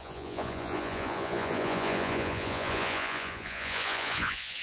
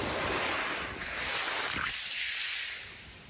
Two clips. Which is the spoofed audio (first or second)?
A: first